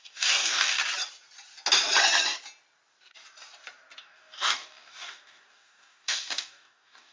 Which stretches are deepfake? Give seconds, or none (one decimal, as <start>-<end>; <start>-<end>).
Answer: 0.0-0.8; 4.0-7.1